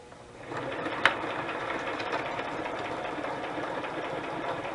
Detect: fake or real fake